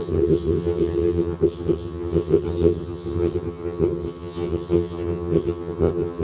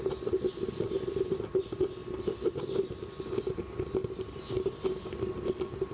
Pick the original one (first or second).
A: second